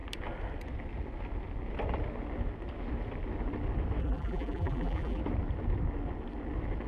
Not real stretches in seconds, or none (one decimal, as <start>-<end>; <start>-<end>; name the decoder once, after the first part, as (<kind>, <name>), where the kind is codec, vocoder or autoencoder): 4.0-5.2 (vocoder, BigVGAN v2)